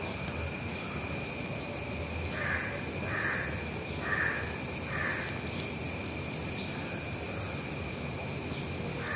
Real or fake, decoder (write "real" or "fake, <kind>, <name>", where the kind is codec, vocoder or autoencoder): real